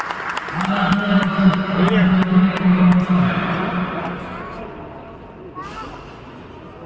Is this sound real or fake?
real